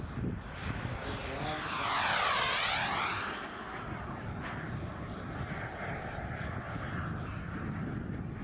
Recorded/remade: recorded